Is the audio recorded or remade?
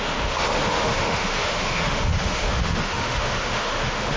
remade